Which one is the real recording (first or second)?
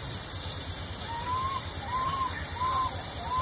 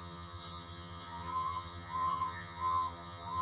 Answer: first